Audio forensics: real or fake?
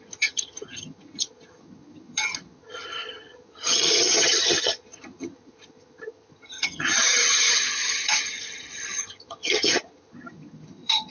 fake